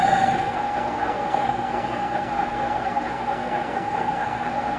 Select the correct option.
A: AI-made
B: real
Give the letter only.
A